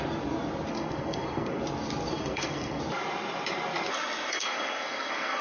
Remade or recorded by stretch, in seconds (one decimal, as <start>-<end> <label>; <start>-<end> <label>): 0.0-0.7 recorded; 0.7-1.6 remade; 1.6-2.1 recorded; 2.1-2.8 remade; 2.8-4.3 recorded; 4.3-5.4 remade